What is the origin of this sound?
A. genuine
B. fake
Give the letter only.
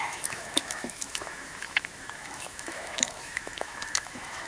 B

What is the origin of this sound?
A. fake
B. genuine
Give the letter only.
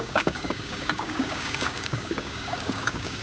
A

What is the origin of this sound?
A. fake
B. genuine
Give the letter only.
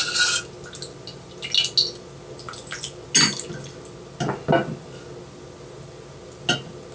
B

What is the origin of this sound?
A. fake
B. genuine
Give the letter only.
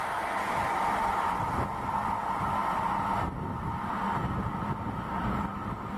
B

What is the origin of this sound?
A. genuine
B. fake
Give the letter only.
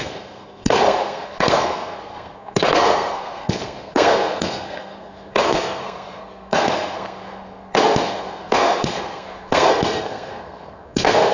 B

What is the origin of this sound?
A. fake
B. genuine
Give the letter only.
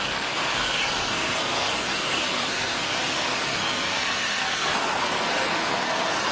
A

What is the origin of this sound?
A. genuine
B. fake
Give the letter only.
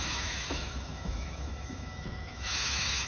B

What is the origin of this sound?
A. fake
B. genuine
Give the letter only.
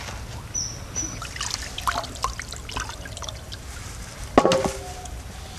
B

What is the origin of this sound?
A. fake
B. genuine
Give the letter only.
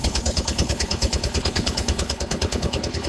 A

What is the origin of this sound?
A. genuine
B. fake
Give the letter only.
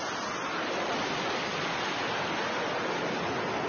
A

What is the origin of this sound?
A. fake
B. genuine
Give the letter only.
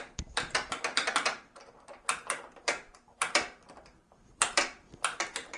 A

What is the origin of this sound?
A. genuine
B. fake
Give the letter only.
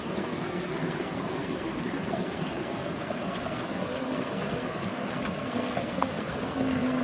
B